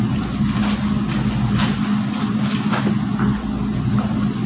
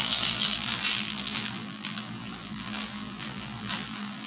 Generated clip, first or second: second